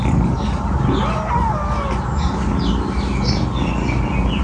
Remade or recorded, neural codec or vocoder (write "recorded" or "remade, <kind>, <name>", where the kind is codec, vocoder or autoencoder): recorded